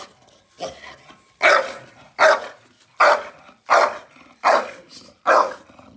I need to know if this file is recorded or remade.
recorded